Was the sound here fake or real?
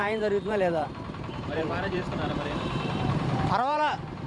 fake